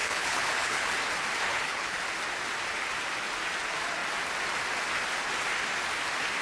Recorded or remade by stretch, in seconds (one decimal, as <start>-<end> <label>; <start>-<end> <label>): 0.0-0.9 remade; 0.9-1.5 recorded; 1.5-2.0 remade; 2.0-6.4 recorded